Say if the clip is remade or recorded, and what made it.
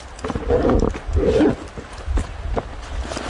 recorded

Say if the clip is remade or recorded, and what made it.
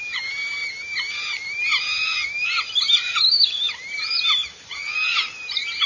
recorded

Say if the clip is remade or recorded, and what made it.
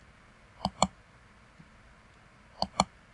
recorded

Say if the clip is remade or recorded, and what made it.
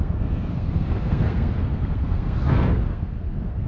remade, codec, SNAC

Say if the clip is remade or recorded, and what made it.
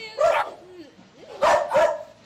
recorded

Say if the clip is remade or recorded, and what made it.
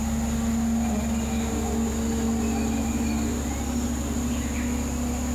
recorded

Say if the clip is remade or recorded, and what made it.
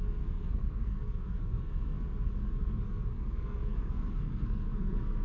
remade, codec, SNAC